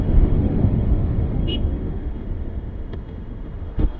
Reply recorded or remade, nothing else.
remade